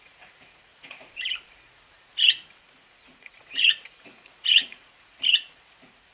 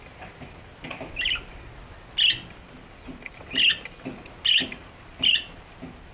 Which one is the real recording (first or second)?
second